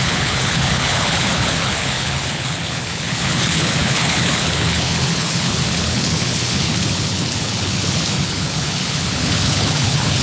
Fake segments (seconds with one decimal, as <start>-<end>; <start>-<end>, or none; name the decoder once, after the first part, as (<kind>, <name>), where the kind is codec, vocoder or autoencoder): 0.0-10.2 (codec, HILCodec)

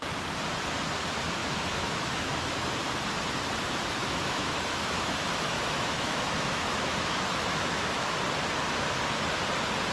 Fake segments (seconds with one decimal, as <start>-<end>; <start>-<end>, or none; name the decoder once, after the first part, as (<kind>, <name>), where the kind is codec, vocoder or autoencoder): 1.4-2.5 (autoencoder, DAC-VAE); 4.0-8.2

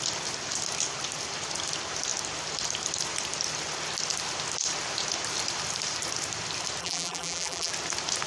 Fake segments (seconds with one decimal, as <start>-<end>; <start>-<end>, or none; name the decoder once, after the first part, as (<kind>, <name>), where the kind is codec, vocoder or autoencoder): 6.8-7.7 (vocoder, BigVGAN v2)

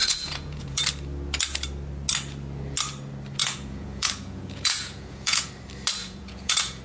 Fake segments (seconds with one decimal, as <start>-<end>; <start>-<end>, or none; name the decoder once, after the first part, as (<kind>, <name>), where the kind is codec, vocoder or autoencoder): 0.0-0.8 (vocoder, Vocos); 3.4-5.5; 6.0-6.8

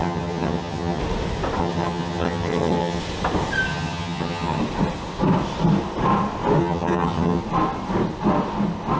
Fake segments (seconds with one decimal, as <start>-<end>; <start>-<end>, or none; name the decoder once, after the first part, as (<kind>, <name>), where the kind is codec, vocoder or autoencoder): 0.0-1.0 (vocoder, HiFi-GAN); 1.6-3.0; 3.7-4.6; 6.6-7.4

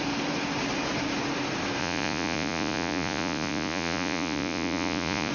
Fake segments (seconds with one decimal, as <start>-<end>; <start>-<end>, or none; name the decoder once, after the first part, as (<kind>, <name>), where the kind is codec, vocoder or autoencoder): 1.8-5.3 (vocoder, Vocos)